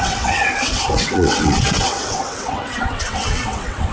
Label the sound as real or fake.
fake